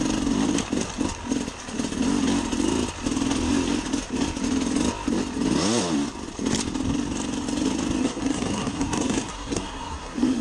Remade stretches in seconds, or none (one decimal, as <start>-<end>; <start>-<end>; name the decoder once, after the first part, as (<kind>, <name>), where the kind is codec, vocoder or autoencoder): 8.0-10.4 (codec, SNAC)